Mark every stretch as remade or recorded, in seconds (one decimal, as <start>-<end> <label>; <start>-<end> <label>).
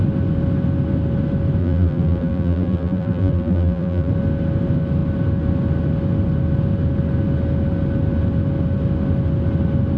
0.0-1.6 recorded; 1.6-4.1 remade; 4.1-10.0 recorded